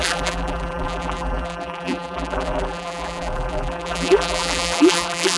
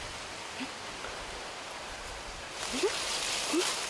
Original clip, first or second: second